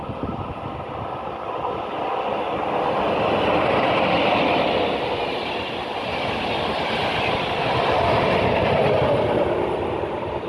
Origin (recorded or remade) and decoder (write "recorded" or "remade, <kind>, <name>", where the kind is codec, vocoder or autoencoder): recorded